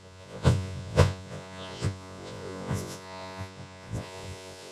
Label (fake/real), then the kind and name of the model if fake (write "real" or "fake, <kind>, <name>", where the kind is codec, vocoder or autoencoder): fake, vocoder, Vocos